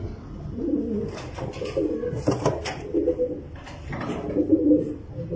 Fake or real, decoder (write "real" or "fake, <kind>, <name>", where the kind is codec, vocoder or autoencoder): real